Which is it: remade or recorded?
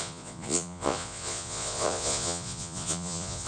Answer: remade